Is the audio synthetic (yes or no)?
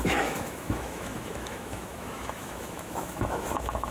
yes